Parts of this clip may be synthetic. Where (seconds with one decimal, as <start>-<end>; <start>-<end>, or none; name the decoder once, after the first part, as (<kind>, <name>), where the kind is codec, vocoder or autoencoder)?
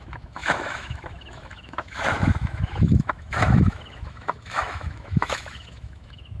0.0-6.4 (autoencoder, DAC-VAE)